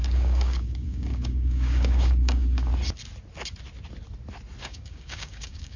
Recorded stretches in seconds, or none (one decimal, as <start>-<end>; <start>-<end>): 2.7-4.6